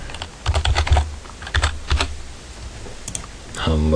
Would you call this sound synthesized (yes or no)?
no